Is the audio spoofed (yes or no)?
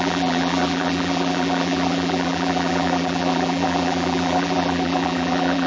yes